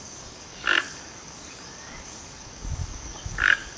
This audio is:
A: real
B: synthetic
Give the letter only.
B